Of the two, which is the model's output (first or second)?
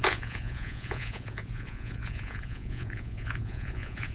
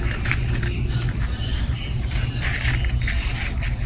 first